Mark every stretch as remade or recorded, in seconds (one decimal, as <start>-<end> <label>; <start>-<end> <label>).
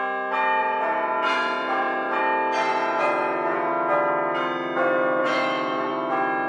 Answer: 0.0-0.6 recorded; 0.6-2.2 remade; 2.2-2.7 recorded; 2.7-3.7 remade; 3.7-5.2 recorded; 5.2-5.9 remade; 5.9-6.5 recorded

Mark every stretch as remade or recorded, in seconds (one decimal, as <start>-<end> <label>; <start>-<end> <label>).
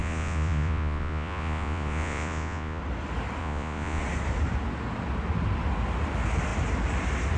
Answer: 0.0-2.8 remade; 2.8-3.4 recorded; 3.4-4.0 remade; 4.0-7.4 recorded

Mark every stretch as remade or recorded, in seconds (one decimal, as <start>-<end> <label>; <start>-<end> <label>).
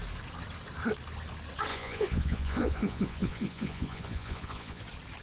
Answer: 0.0-1.7 recorded; 1.7-4.8 remade; 4.8-5.2 recorded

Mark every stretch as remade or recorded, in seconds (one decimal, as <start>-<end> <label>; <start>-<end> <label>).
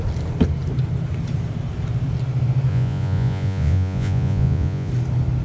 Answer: 0.0-2.7 recorded; 2.7-4.9 remade; 4.9-5.4 recorded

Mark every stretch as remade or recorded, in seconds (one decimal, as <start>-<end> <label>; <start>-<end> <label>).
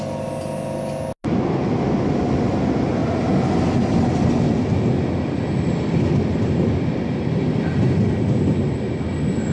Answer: 0.0-9.5 recorded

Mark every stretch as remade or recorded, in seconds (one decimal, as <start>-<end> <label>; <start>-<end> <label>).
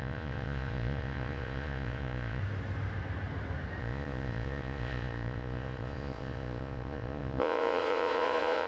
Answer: 0.0-2.4 remade; 2.4-3.8 recorded; 3.8-8.7 remade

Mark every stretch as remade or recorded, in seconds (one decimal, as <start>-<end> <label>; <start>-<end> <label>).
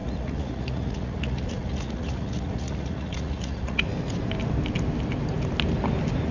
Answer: 0.0-3.8 remade; 3.8-6.3 recorded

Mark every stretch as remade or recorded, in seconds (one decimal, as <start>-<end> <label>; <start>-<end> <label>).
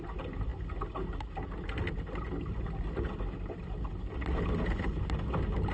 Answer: 0.0-5.7 recorded